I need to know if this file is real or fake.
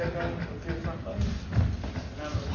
real